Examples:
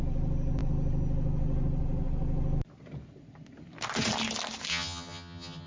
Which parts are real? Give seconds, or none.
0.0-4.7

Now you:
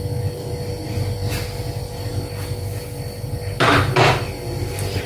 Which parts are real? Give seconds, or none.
0.0-5.1